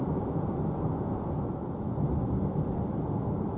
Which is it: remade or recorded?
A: recorded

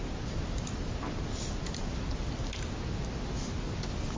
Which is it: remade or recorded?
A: recorded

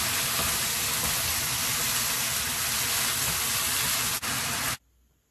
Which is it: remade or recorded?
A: recorded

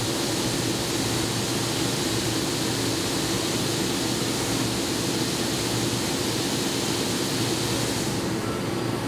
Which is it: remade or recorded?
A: recorded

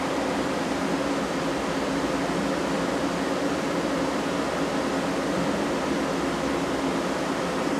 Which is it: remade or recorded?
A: recorded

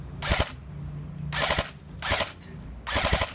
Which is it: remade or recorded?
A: recorded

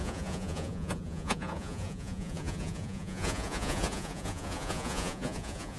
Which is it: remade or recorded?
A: remade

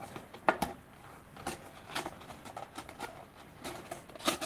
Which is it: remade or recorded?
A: recorded